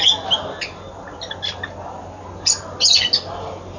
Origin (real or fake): real